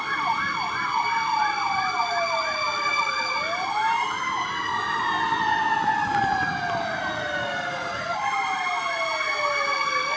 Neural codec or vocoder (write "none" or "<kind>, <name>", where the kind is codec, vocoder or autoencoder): none